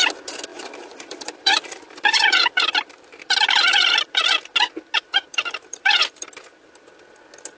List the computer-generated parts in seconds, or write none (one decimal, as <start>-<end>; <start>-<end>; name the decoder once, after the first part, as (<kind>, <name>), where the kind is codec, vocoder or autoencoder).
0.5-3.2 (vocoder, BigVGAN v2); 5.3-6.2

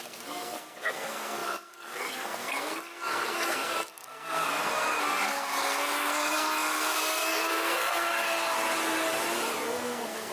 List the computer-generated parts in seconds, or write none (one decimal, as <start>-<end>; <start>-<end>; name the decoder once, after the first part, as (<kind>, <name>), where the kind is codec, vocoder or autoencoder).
0.0-8.1 (codec, SNAC); 9.7-10.3

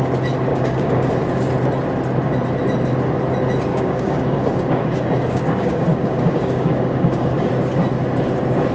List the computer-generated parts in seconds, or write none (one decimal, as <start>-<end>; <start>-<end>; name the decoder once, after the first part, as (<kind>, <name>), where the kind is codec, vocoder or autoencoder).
0.5-1.1 (codec, DAC); 3.7-7.5

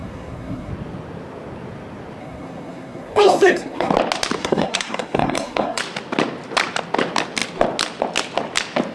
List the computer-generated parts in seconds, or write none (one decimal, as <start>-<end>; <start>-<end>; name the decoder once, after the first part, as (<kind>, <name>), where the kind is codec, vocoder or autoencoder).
0.0-0.7 (codec, SNAC); 2.2-3.9; 4.4-5.8

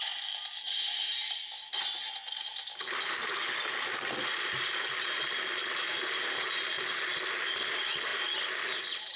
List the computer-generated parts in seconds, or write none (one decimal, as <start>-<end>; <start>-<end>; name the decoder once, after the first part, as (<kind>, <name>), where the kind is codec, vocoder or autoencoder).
none

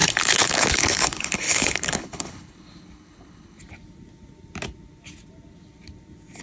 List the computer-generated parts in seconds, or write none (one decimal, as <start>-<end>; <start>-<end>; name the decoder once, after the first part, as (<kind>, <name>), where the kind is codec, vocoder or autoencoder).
0.0-3.6 (codec, HILCodec)